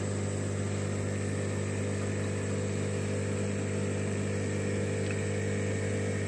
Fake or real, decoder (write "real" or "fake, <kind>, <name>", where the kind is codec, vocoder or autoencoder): fake, vocoder, BigVGAN v2